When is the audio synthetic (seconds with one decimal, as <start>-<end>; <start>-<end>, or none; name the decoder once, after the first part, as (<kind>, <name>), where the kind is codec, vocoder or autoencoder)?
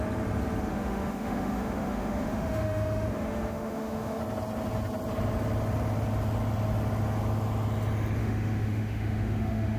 0.7-4.2 (autoencoder, DAC-VAE); 8.2-9.8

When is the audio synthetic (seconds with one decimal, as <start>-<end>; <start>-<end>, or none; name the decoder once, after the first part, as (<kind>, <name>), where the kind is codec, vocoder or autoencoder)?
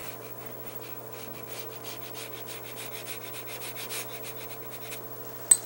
0.0-3.3 (vocoder, BigVGAN v2)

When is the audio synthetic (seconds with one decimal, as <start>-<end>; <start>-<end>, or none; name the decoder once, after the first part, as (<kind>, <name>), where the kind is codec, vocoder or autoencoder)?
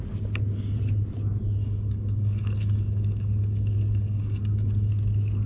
1.6-4.9 (codec, DAC)